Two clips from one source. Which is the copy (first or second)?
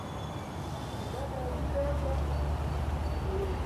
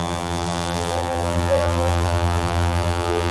second